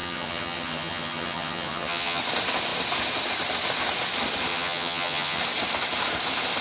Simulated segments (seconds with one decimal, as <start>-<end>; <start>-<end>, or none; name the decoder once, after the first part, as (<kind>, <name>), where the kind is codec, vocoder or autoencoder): 0.0-2.2 (vocoder, HiFi-GAN); 4.5-5.4